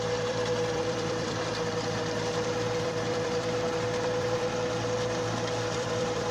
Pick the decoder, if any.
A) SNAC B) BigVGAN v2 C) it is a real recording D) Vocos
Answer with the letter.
B